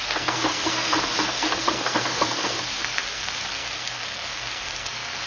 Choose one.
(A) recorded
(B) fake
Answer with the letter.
B